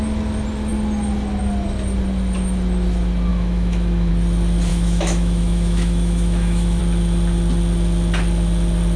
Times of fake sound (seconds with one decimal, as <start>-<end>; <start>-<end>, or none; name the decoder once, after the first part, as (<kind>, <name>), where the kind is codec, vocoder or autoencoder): 3.3-4.1 (autoencoder, DAC-VAE); 4.7-6.8